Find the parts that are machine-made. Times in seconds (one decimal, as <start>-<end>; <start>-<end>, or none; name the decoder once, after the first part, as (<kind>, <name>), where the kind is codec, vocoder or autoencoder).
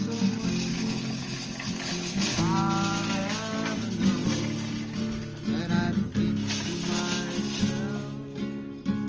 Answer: 0.7-2.4 (codec, HILCodec)